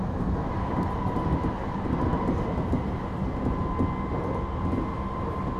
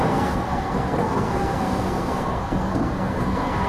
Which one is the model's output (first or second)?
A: second